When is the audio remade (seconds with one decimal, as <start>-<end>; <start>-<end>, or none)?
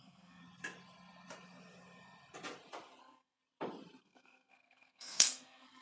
0.0-0.4; 3.0-3.4; 4.0-5.8